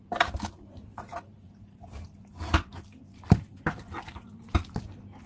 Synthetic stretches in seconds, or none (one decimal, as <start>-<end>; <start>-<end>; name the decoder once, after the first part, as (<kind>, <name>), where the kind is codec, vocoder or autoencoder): none